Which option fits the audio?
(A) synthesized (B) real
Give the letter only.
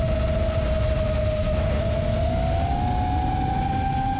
B